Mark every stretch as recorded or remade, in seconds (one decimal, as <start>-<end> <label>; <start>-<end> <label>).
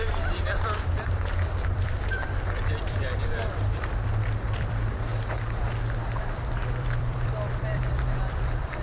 0.0-5.1 remade; 5.1-6.2 recorded; 6.2-8.8 remade